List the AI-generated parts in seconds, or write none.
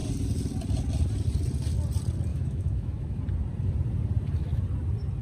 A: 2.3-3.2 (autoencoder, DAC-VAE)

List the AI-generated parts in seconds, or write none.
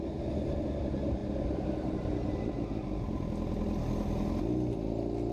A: none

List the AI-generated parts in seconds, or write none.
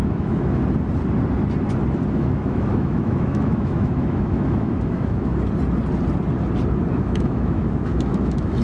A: 0.0-0.6 (autoencoder, DAC-VAE); 2.1-5.3; 6.9-8.6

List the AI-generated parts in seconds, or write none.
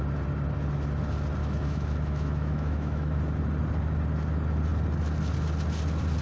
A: 1.4-3.2 (autoencoder, DAC-VAE)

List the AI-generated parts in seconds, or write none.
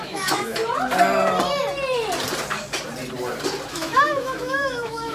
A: 0.0-0.6 (autoencoder, DAC-VAE); 3.7-5.1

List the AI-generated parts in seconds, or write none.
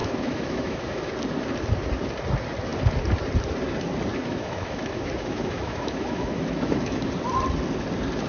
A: 0.0-1.1 (autoencoder, DAC-VAE); 4.1-7.0